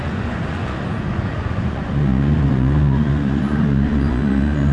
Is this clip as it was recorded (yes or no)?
no